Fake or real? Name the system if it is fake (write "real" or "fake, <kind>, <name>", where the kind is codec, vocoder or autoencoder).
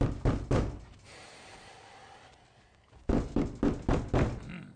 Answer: real